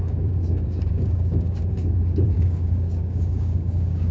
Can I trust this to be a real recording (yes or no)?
no